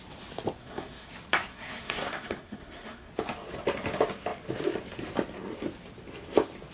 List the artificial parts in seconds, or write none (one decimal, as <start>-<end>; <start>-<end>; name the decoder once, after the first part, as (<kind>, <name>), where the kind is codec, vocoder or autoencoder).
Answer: 0.6-1.1 (codec, SNAC); 1.5-3.1